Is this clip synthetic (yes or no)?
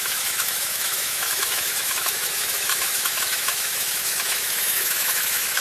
yes